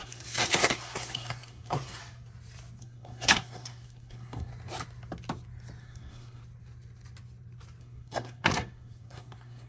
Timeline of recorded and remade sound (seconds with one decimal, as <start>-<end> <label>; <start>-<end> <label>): 0.0-2.0 remade; 2.0-2.8 recorded; 2.8-4.5 remade; 4.5-5.8 recorded; 5.8-6.4 remade; 6.4-7.8 recorded; 7.8-9.7 remade